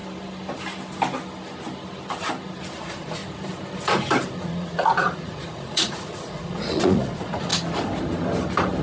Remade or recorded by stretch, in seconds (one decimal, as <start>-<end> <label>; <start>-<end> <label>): 0.0-2.8 recorded; 2.8-3.2 remade; 3.2-4.4 recorded; 4.4-7.5 remade; 7.5-8.8 recorded